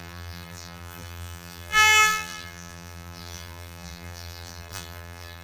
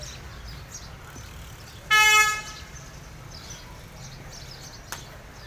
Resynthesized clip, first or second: first